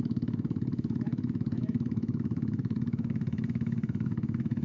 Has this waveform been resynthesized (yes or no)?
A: yes